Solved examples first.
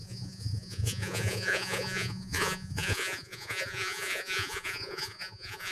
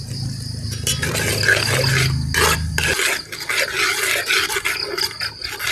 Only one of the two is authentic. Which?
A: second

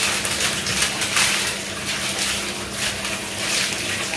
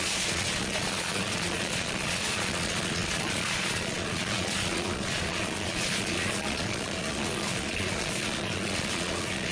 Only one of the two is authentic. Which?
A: first